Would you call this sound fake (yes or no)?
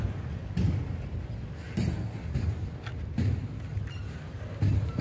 no